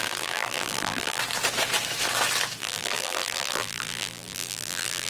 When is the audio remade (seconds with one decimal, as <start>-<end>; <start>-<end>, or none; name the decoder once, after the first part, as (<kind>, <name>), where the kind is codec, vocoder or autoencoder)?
0.0-1.2 (vocoder, BigVGAN v2); 2.6-5.1